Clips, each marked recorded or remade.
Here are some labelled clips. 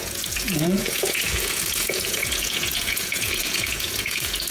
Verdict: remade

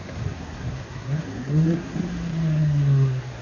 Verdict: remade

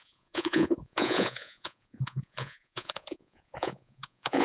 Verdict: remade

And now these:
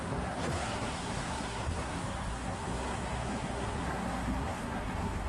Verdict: remade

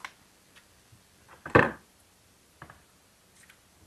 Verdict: recorded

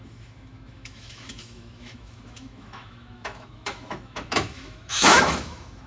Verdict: remade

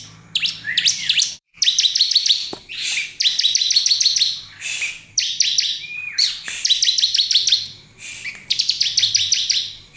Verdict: remade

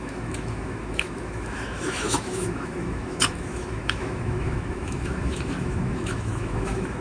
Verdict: remade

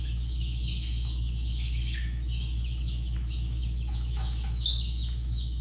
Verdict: remade